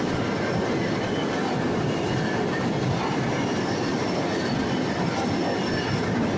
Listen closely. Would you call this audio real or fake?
fake